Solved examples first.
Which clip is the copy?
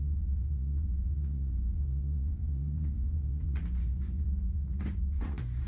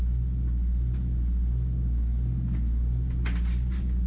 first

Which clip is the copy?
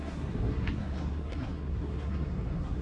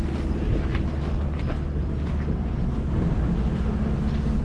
first